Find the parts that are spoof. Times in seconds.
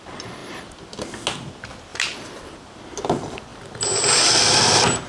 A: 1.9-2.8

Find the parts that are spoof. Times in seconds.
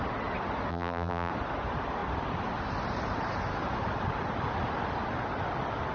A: 0.7-1.3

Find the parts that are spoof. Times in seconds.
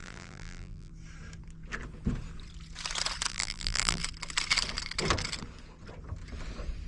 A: 0.0-0.9; 3.3-4.0